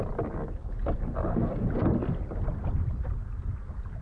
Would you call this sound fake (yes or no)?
no